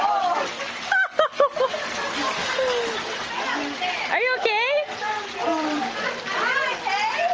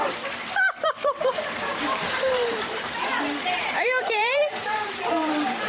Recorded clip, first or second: first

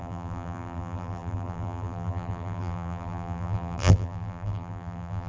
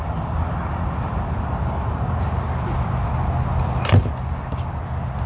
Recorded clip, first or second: second